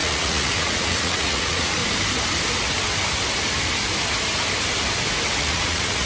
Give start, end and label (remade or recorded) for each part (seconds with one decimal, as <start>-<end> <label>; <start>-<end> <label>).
0.0-1.8 remade; 1.8-5.4 recorded; 5.4-6.1 remade